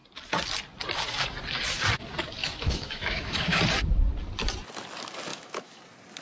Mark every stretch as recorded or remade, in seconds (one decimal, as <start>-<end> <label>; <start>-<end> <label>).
0.0-2.4 recorded; 2.4-3.6 remade; 3.6-5.3 recorded; 5.3-5.8 remade; 5.8-6.2 recorded